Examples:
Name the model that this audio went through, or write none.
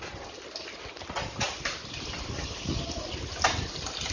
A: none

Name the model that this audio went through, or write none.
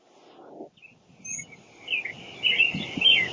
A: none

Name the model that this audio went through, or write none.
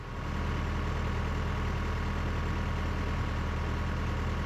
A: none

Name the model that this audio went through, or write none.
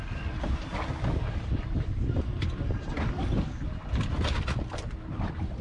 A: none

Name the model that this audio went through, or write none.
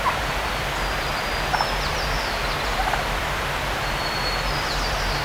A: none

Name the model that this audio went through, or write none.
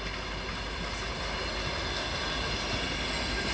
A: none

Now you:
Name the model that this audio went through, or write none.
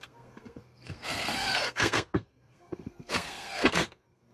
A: codec, SNAC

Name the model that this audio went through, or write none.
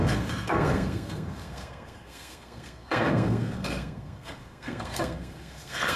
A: codec, SNAC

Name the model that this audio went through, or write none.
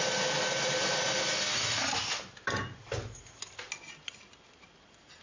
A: none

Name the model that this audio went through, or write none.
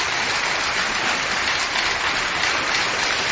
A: none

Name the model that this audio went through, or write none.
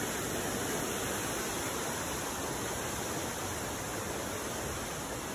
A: none